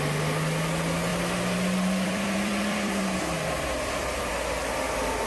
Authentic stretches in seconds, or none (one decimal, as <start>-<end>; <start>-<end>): 0.0-1.1; 4.3-5.3